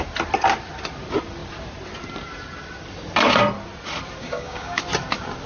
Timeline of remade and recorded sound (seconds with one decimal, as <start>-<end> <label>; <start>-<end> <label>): 0.0-4.2 recorded; 4.2-4.8 remade; 4.8-5.5 recorded